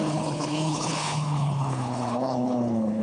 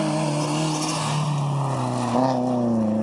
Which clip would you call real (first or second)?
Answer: second